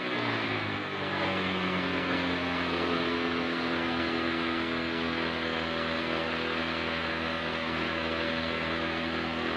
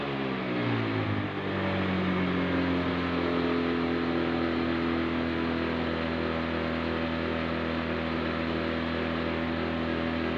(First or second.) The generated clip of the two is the first